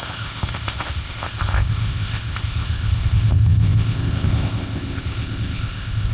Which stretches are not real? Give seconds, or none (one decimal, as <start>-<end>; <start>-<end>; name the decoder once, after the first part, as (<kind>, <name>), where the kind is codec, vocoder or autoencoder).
0.0-6.1 (codec, ZipCodec)